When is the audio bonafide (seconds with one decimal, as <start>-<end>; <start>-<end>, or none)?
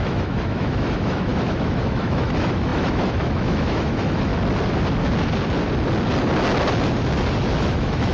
4.3-7.6